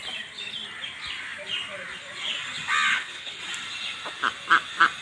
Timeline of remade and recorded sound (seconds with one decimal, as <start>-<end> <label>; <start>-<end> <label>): 0.0-2.9 recorded; 2.9-3.4 remade; 3.4-5.0 recorded